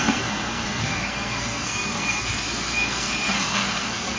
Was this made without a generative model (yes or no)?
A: no